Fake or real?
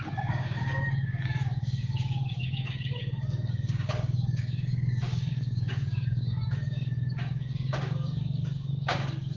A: fake